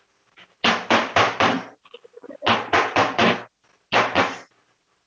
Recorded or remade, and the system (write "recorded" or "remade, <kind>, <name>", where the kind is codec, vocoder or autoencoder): recorded